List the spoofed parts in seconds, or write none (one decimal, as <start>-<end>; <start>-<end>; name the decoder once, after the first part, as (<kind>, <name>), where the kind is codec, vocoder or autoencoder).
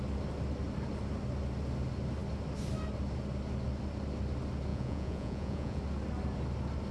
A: 4.7-5.8 (vocoder, Vocos)